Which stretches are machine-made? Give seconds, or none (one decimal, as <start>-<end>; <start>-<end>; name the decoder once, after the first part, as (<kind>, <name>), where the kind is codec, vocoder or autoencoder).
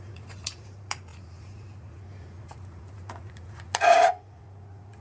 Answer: 0.0-5.0 (vocoder, Vocos)